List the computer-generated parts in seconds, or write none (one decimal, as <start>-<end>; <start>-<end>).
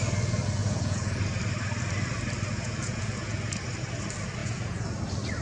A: 0.6-1.2; 2.5-3.6; 4.4-5.0